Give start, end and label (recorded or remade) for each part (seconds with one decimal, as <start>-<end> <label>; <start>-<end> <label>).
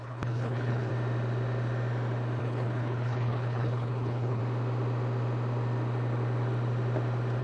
0.0-0.9 remade; 0.9-2.4 recorded; 2.4-4.4 remade; 4.4-7.4 recorded